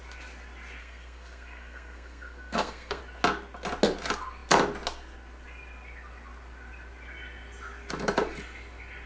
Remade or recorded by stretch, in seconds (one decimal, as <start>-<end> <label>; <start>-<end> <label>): 0.0-0.8 recorded; 0.8-3.0 remade; 3.0-9.1 recorded